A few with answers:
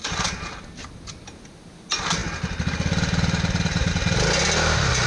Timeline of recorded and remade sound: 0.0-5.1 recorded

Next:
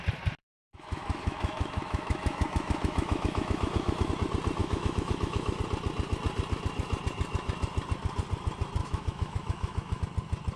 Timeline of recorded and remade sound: 0.0-0.4 recorded; 0.4-4.1 remade; 4.1-4.6 recorded; 4.6-5.6 remade; 5.6-8.8 recorded; 8.8-10.0 remade; 10.0-10.6 recorded

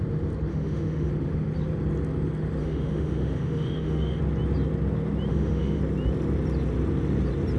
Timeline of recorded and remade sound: 0.0-0.5 recorded; 0.5-1.1 remade; 1.1-2.6 recorded; 2.6-4.2 remade; 4.2-5.3 recorded; 5.3-5.8 remade; 5.8-7.6 recorded

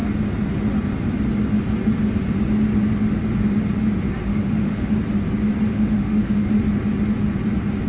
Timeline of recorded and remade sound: 0.0-4.3 recorded; 4.3-4.9 remade; 4.9-5.7 recorded; 5.7-6.5 remade; 6.5-7.9 recorded

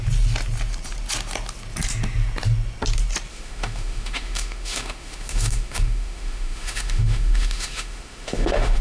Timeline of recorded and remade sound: 0.0-3.3 recorded; 3.3-8.8 remade

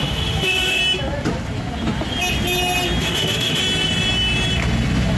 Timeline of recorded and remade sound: 0.0-0.8 remade; 0.8-3.0 recorded; 3.0-3.6 remade; 3.6-5.2 recorded

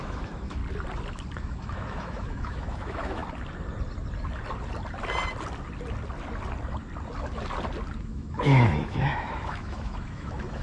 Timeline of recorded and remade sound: 0.0-0.6 remade; 0.6-1.4 recorded; 1.4-3.2 remade; 3.2-8.0 recorded; 8.0-10.6 remade